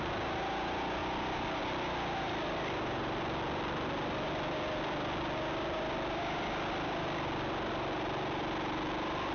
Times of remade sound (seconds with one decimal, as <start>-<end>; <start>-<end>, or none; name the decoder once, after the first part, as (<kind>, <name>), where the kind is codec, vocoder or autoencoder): none